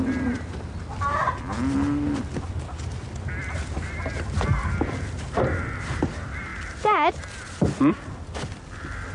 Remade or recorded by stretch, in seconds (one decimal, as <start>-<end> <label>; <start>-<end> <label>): 0.0-9.1 recorded